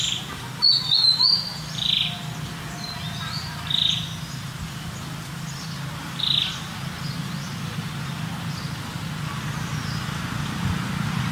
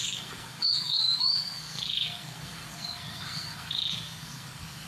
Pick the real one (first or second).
first